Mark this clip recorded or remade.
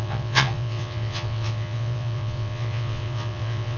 remade